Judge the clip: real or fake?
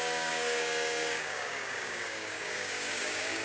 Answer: fake